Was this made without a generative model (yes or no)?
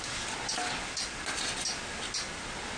yes